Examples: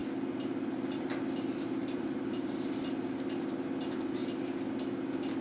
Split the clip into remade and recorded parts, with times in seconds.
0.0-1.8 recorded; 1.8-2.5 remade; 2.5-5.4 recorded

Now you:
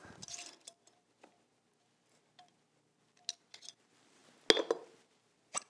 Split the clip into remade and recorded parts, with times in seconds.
0.0-5.7 recorded

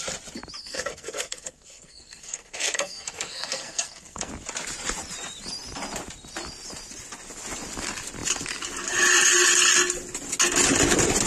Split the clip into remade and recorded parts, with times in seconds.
0.0-0.6 recorded; 0.6-4.3 remade; 4.3-11.3 recorded

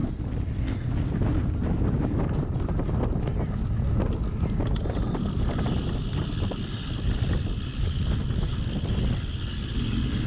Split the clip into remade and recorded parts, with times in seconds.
0.0-10.3 recorded

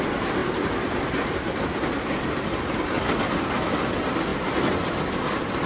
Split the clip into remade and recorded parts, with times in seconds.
0.0-0.4 recorded; 0.4-2.3 remade; 2.3-5.7 recorded

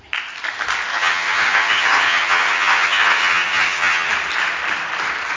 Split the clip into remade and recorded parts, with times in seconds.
0.0-0.9 recorded; 0.9-4.1 remade; 4.1-5.4 recorded